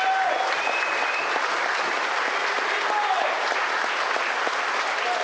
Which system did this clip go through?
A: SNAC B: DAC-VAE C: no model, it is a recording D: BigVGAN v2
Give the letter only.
C